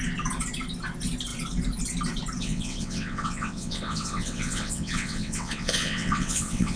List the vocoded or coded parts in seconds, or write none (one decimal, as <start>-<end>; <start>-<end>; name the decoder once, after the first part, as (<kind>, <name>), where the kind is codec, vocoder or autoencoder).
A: 2.4-6.8 (vocoder, WaveNeXt)